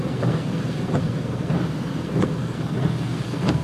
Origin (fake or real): fake